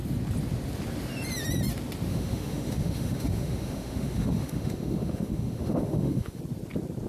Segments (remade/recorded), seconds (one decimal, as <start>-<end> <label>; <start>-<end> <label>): 0.0-2.1 recorded; 2.1-6.4 remade; 6.4-7.1 recorded